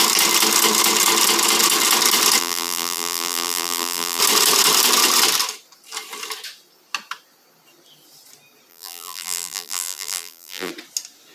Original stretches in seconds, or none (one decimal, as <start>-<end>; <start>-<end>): 0.0-2.4; 4.2-8.7; 10.7-11.3